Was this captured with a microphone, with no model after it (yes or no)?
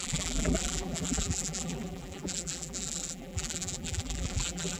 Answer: no